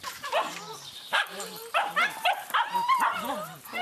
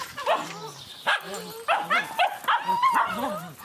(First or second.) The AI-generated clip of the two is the first